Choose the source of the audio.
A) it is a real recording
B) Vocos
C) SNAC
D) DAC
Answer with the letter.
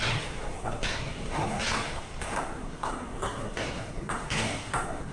C